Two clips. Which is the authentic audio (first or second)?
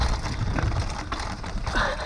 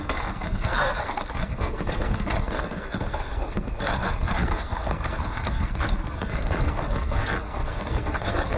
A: first